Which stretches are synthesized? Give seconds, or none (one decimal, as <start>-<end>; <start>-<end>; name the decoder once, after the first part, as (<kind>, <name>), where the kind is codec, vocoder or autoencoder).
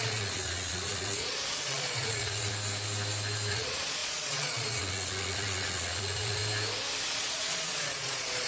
0.0-2.5 (vocoder, Vocos); 3.5-6.4; 7.1-8.5